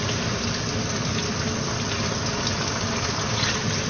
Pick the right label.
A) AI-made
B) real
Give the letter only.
B